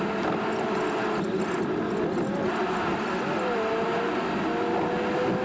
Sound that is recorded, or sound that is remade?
recorded